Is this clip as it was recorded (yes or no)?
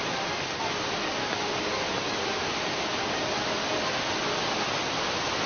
yes